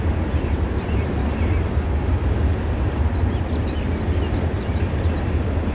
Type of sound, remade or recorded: recorded